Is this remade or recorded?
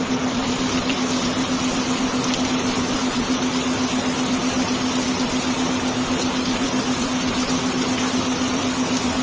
remade